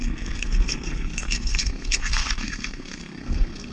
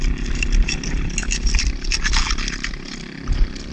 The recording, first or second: second